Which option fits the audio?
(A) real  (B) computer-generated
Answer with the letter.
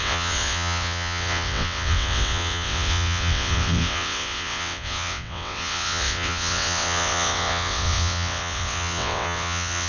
B